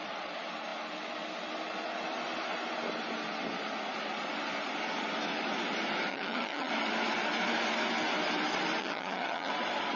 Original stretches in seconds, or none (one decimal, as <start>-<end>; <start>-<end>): 0.0-6.1; 6.7-8.8; 9.5-10.0